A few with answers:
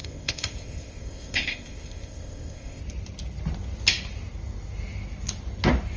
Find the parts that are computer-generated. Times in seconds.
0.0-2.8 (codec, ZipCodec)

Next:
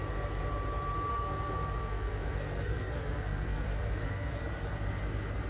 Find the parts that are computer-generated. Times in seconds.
1.1-4.4 (codec, SNAC)